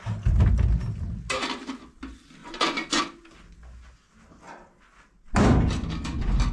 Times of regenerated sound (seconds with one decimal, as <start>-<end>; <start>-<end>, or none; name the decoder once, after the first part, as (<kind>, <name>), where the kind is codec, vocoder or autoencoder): 2.4-3.0 (vocoder, Vocos)